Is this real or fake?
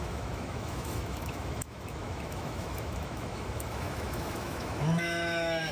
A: fake